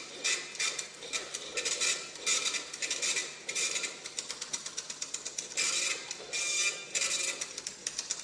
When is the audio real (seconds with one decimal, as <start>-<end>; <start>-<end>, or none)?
0.0-3.2; 6.4-8.2